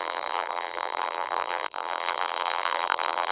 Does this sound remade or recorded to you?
remade